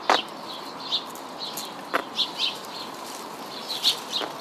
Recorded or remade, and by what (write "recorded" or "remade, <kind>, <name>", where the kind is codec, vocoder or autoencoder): recorded